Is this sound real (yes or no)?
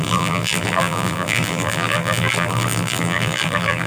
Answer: no